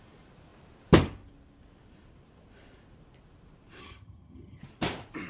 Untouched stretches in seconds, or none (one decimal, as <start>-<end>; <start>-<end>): 0.0-3.8; 4.6-5.3